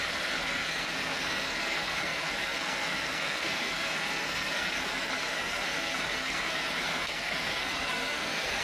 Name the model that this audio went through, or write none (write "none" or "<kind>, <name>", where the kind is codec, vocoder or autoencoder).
codec, SNAC